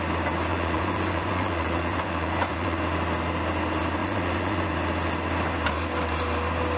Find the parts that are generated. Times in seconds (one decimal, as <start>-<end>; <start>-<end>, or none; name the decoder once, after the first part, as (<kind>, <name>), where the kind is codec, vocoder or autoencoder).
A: 0.5-2.8 (vocoder, Vocos); 4.0-4.7